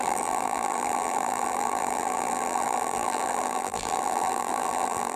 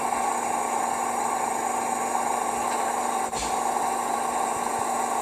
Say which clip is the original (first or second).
second